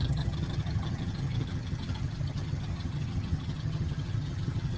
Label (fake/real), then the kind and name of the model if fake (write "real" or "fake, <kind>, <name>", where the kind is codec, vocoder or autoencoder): fake, vocoder, HiFi-GAN